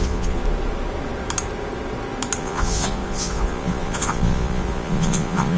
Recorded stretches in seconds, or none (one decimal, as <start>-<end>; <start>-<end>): 0.4-2.4